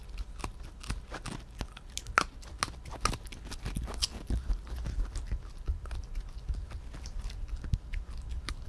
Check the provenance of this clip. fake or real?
real